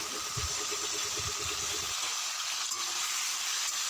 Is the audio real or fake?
real